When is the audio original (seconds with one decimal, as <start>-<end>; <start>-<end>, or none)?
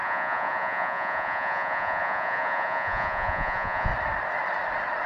3.9-5.1